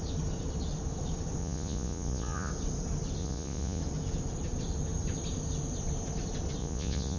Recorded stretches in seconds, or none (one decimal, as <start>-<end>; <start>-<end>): 0.0-1.4; 2.5-3.2; 3.8-6.6